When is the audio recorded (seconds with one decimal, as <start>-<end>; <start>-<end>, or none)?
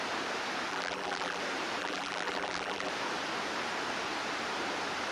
0.0-0.7; 1.4-1.8; 2.9-5.1